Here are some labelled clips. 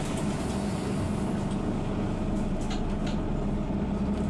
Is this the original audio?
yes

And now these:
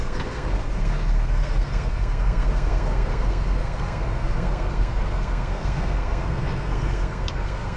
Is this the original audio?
no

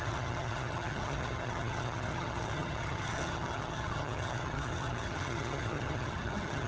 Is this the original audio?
no